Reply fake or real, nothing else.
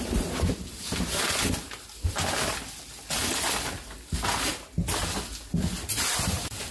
real